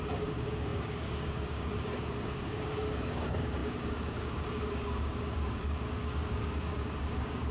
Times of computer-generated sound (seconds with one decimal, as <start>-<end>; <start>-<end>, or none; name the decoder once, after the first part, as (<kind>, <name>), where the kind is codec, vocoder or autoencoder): 0.0-7.5 (codec, DAC)